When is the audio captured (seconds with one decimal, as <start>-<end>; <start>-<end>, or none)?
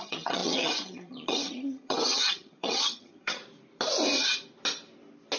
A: 3.4-5.4